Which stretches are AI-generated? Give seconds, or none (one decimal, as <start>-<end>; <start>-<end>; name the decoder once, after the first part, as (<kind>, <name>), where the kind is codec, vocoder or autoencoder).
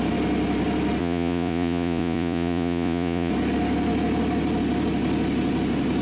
1.0-3.3 (vocoder, Vocos)